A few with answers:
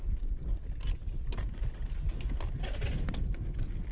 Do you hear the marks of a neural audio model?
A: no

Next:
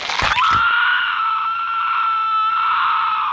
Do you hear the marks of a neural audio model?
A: no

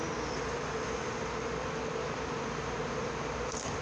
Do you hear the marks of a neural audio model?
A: no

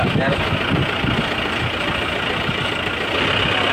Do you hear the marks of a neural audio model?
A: no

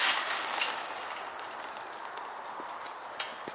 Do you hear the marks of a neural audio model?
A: no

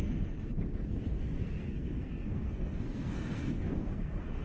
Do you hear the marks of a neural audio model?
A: yes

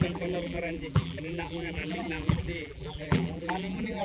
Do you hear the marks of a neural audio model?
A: yes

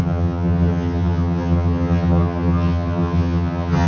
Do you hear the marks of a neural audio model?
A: yes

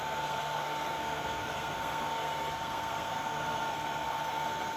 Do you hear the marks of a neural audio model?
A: yes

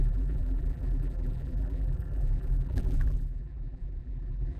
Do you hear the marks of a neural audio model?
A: yes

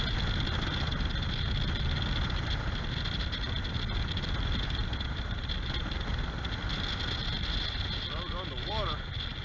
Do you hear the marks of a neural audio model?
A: no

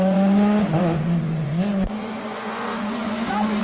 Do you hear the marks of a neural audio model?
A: yes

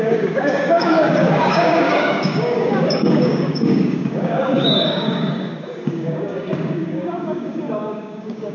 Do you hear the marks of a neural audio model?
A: yes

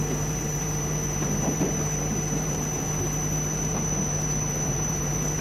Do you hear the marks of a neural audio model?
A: yes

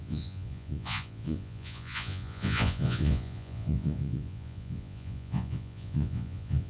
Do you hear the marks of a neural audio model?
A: yes